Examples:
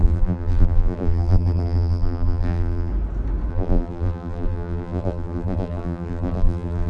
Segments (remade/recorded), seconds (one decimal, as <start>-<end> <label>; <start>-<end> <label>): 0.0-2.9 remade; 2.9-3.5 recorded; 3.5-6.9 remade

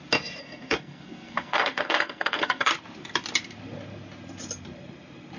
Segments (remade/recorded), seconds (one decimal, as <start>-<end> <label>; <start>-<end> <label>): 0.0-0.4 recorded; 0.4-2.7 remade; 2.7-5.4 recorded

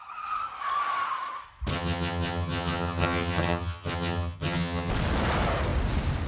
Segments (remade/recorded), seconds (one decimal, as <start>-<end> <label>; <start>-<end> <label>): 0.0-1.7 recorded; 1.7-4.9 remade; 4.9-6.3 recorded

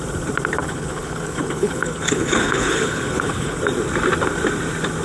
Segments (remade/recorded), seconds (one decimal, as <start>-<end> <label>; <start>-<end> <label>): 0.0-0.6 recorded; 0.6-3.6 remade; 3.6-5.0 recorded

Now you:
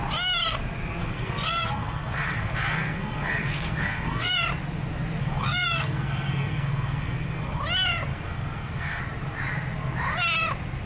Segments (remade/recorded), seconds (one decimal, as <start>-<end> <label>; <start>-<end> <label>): 0.0-1.0 recorded; 1.0-4.3 remade; 4.3-5.2 recorded; 5.2-7.6 remade; 7.6-8.1 recorded; 8.1-9.0 remade; 9.0-10.9 recorded

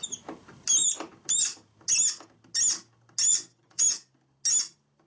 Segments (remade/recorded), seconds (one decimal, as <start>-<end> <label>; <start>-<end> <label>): 0.0-3.3 recorded; 3.3-3.8 remade; 3.8-5.1 recorded

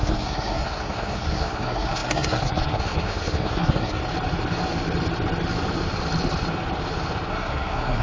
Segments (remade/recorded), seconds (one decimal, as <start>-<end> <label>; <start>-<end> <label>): 0.0-4.0 remade; 4.0-7.3 recorded; 7.3-8.0 remade

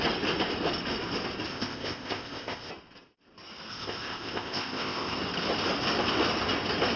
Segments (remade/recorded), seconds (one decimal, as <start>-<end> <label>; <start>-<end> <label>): 0.0-1.5 recorded; 1.5-2.7 remade; 2.7-3.7 recorded; 3.7-5.2 remade; 5.2-7.0 recorded